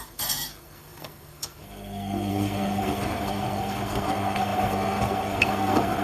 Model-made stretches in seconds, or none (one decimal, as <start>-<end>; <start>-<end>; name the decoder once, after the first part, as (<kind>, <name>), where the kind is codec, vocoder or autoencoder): 0.0-6.0 (codec, SNAC)